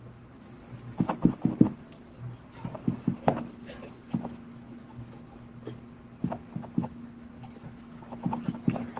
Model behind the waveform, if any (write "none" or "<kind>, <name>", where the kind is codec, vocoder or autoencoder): none